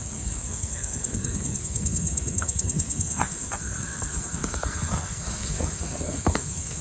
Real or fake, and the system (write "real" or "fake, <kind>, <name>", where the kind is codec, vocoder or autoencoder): fake, codec, SNAC